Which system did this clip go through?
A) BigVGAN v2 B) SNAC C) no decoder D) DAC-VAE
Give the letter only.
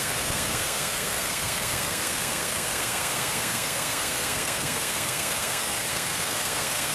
B